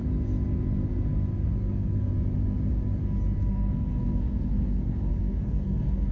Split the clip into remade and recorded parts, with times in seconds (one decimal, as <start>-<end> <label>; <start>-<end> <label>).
0.0-1.6 recorded; 1.6-2.1 remade; 2.1-3.5 recorded; 3.5-6.1 remade